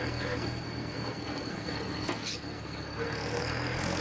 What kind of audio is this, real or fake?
fake